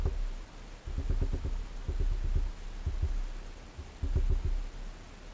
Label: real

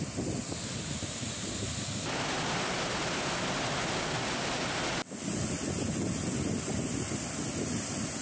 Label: real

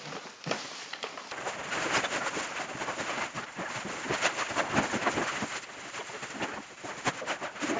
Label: real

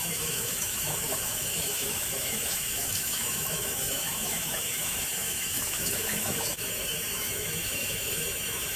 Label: fake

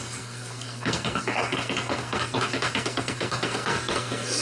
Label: fake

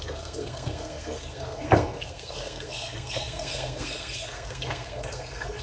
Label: fake